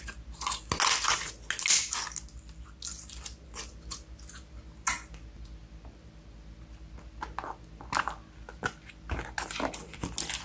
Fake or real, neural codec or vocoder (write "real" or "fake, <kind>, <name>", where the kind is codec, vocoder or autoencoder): real